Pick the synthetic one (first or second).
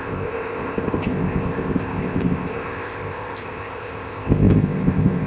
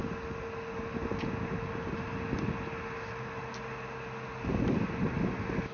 first